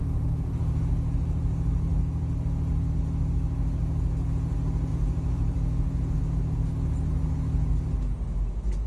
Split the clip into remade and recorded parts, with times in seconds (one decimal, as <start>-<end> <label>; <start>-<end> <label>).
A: 0.0-0.8 remade; 0.8-4.9 recorded; 4.9-6.2 remade; 6.2-8.9 recorded